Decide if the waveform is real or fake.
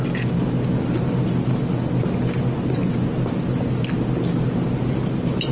real